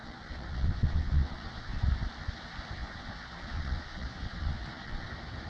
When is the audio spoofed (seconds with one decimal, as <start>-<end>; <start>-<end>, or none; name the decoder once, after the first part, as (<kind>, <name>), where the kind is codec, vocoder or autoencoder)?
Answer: 0.0-1.8 (vocoder, Vocos); 2.8-5.1